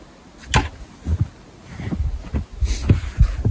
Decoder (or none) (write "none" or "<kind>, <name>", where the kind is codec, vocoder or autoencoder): none